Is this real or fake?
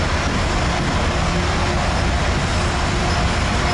real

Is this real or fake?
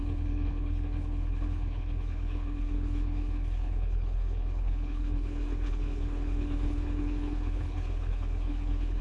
fake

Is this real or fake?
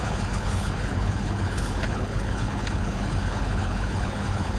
fake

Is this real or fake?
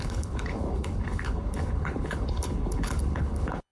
fake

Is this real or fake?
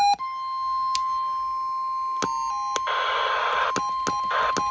real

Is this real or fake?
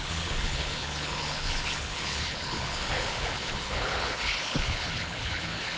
fake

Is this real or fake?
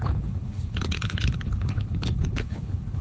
fake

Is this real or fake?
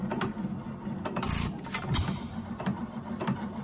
real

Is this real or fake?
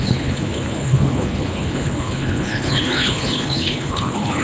fake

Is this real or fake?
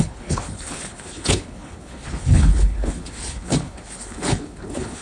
fake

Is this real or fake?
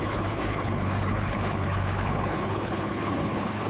fake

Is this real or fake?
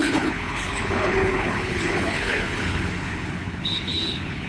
fake